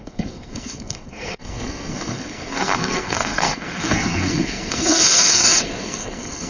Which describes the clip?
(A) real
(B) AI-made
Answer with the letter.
B